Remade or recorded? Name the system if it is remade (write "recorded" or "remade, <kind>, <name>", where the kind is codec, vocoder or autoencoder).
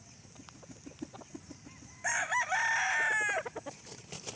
recorded